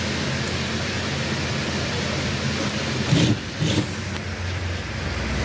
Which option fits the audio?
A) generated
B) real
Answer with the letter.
B